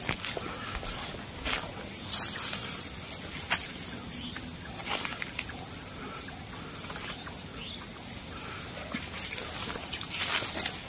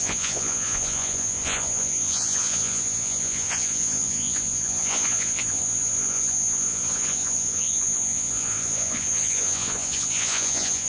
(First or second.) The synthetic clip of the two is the second